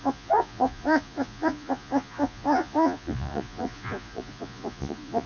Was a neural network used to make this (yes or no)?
yes